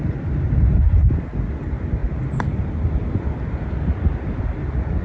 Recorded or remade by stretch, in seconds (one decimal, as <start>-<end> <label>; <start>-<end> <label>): 0.0-5.0 recorded